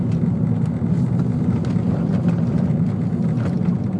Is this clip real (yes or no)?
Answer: yes